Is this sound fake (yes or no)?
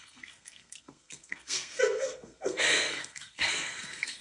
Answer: yes